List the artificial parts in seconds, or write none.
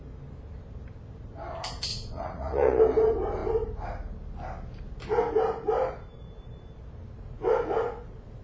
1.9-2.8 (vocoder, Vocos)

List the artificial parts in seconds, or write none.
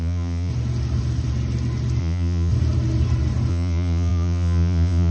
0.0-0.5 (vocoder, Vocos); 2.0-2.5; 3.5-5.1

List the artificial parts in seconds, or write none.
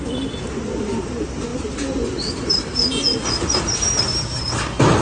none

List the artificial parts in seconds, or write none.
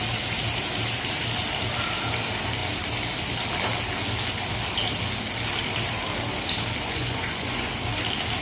6.8-7.7 (vocoder, Vocos)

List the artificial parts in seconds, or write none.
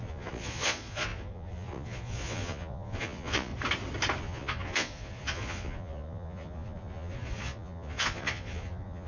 0.0-3.5 (vocoder, Vocos); 4.2-9.1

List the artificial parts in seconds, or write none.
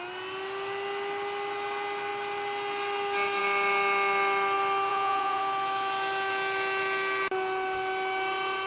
4.9-5.4 (vocoder, Vocos)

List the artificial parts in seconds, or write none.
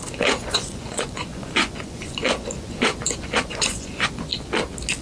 0.0-4.3 (vocoder, Vocos)